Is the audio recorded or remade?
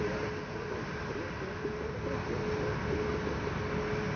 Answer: recorded